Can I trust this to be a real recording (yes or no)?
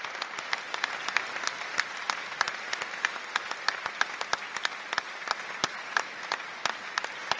yes